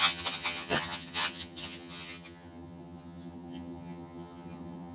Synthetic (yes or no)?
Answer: yes